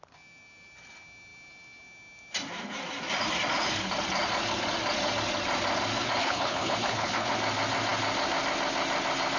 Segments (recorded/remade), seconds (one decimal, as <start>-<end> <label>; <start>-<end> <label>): 0.0-6.2 recorded; 6.2-7.3 remade; 7.3-9.4 recorded